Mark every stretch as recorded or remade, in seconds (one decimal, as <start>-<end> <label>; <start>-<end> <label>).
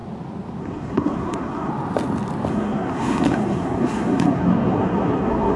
0.0-0.6 recorded; 0.6-1.7 remade; 1.7-2.5 recorded; 2.5-5.6 remade